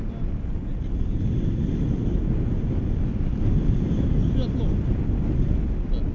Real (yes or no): yes